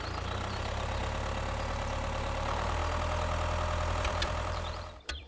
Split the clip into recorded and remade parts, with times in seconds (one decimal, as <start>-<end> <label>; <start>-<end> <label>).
0.0-1.0 remade; 1.0-1.7 recorded; 1.7-2.8 remade; 2.8-3.9 recorded; 3.9-5.3 remade

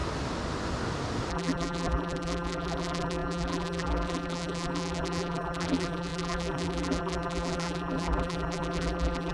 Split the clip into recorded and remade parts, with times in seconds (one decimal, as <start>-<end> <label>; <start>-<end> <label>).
0.0-1.3 recorded; 1.3-9.3 remade

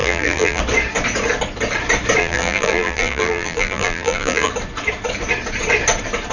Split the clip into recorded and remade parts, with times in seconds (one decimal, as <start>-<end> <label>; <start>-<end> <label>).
0.0-0.6 remade; 0.6-2.2 recorded; 2.2-4.5 remade; 4.5-6.3 recorded